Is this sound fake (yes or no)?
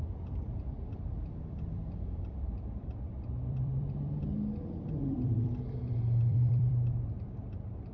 yes